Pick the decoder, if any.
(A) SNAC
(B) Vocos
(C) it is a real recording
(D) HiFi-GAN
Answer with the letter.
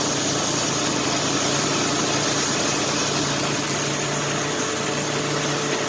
C